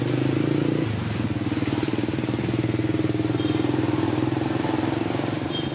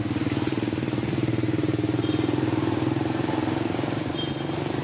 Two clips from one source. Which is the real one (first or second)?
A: first